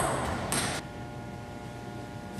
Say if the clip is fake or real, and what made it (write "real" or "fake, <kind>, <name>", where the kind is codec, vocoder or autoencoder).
real